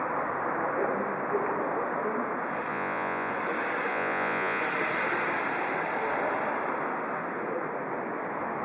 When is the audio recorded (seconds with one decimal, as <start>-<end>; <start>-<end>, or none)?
0.0-2.7; 3.3-3.9; 4.6-8.6